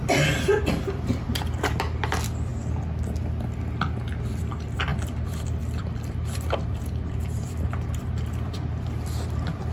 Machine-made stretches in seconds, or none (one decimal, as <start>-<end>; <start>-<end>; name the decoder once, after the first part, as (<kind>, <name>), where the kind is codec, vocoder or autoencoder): 0.0-2.5 (vocoder, BigVGAN v2); 4.4-9.7